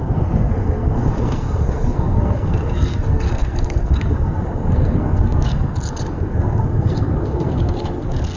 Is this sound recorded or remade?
remade